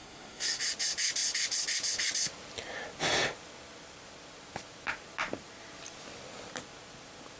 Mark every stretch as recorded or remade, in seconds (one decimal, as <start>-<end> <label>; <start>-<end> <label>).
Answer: 0.0-0.6 remade; 0.6-7.4 recorded